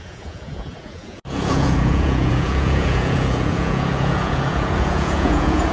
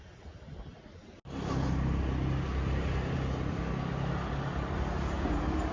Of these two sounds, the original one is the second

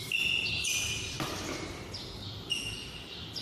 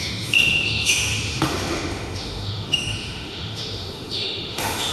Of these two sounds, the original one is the first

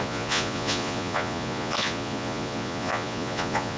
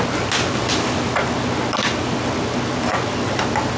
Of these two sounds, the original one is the second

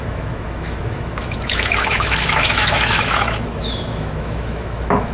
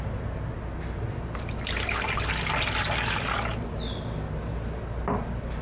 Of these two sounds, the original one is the second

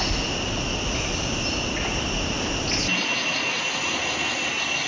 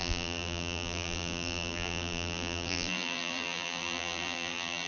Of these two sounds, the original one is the first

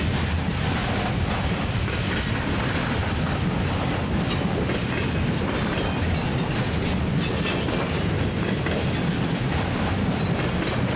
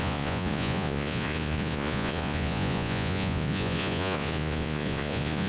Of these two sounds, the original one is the first